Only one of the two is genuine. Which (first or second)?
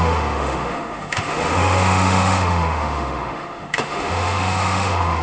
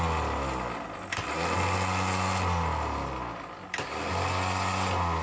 second